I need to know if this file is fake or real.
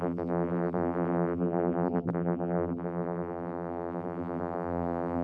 fake